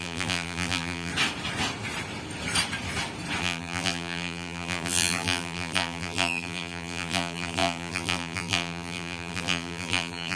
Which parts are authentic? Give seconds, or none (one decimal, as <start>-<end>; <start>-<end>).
1.1-3.4